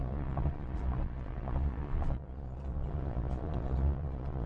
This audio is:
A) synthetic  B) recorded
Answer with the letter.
A